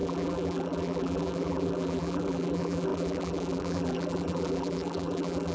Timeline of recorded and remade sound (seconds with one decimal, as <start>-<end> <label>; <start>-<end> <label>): 0.0-5.5 remade